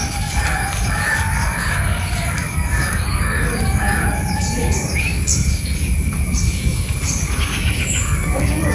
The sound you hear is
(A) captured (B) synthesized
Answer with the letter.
B